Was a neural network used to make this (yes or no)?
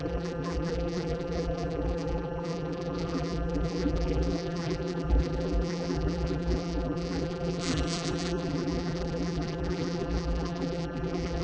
yes